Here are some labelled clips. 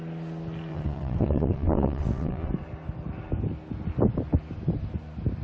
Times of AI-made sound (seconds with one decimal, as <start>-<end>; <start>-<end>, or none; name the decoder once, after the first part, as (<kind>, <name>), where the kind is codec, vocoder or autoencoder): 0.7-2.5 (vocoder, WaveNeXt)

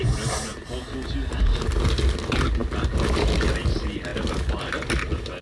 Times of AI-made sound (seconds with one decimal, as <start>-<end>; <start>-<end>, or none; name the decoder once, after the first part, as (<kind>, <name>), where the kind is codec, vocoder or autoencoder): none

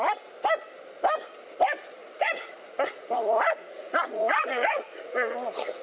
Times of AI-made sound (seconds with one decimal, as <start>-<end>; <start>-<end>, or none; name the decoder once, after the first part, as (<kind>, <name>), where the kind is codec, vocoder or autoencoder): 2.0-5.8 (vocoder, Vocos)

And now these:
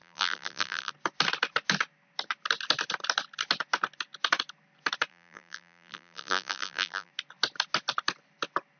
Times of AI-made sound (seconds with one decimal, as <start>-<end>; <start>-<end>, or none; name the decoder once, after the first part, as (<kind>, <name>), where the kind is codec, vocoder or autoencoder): 0.0-0.9 (vocoder, BigVGAN v2); 5.1-7.1

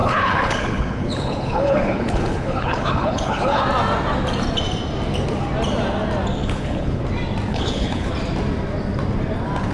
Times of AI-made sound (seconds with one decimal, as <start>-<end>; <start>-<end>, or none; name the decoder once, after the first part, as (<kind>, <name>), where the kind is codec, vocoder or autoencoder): 0.0-3.6 (codec, HILCodec); 6.4-7.0; 7.5-8.1